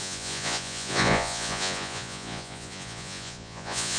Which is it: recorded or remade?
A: remade